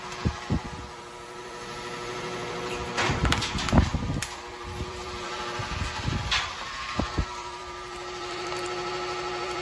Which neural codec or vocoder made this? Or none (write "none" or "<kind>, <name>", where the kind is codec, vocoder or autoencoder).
vocoder, BigVGAN v2